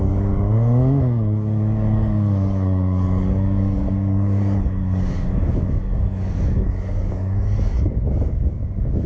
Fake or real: fake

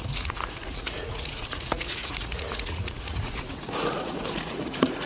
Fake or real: fake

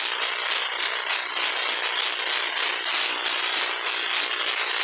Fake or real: real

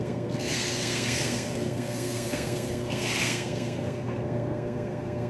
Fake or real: fake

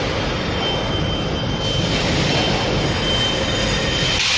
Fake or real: real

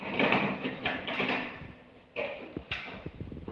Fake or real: fake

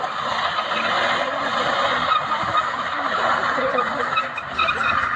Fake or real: real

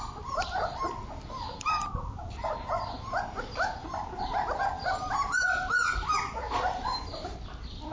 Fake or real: real